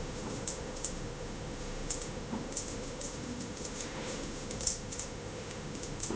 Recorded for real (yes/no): no